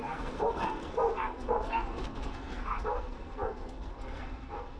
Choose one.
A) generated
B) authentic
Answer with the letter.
A